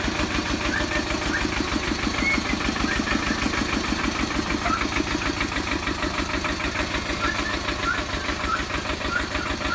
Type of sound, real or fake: real